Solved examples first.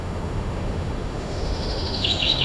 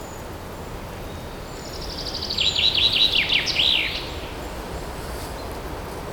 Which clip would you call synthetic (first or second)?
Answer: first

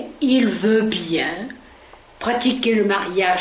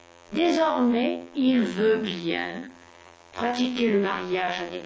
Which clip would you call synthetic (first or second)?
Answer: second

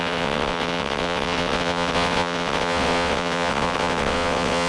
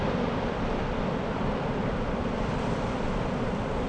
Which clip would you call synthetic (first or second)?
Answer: first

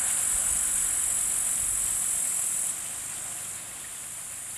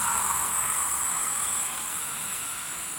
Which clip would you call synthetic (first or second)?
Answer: second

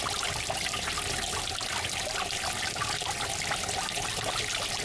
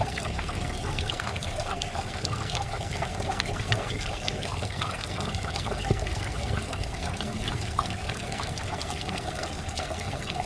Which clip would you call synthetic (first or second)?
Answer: second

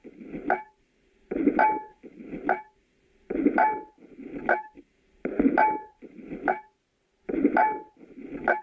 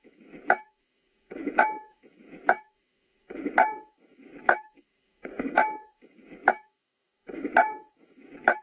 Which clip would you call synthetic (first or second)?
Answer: second